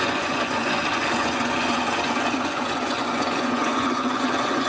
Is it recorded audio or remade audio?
remade